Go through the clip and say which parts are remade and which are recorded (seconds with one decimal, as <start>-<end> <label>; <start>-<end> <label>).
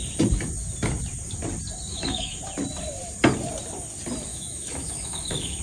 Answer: 0.0-1.9 recorded; 1.9-2.4 remade; 2.4-4.3 recorded; 4.3-5.6 remade